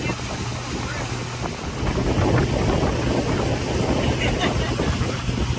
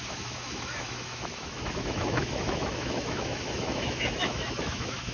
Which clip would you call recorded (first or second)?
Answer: first